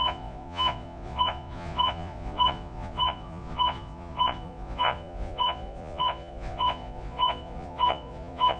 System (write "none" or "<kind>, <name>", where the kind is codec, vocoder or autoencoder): vocoder, Vocos